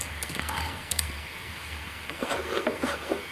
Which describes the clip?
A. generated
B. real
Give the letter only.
A